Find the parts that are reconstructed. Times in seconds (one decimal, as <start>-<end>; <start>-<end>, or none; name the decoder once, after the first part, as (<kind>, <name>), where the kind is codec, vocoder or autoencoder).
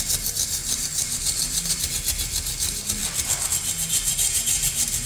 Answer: 0.6-1.8 (vocoder, BigVGAN v2)